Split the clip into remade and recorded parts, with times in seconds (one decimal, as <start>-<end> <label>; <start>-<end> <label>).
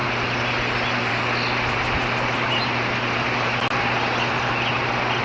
0.0-5.2 recorded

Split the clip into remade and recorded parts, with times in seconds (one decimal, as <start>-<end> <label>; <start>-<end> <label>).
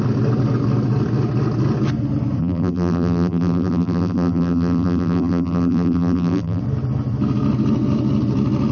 0.0-2.4 recorded; 2.4-6.6 remade; 6.6-8.7 recorded